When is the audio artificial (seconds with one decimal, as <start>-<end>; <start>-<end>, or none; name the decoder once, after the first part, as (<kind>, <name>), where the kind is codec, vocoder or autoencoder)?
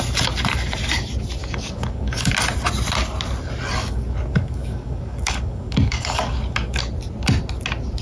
1.4-2.3 (codec, DAC); 3.8-6.8